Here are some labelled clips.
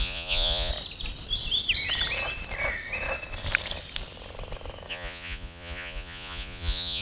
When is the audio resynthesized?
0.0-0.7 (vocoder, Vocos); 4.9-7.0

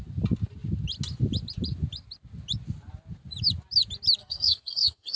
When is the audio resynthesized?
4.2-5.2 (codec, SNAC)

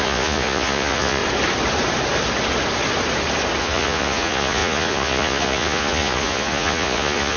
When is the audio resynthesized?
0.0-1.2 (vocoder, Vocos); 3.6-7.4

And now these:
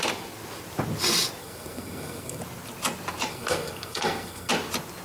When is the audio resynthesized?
1.4-2.4 (codec, SNAC); 3.3-4.5